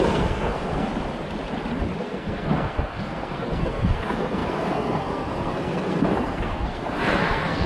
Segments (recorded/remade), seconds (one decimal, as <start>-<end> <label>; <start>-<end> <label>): 0.0-0.9 remade; 0.9-2.0 recorded; 2.0-7.7 remade